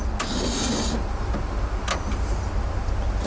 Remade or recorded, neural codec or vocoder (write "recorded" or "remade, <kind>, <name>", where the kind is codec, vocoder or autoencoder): recorded